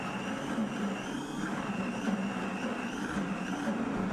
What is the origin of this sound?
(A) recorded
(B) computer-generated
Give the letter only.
A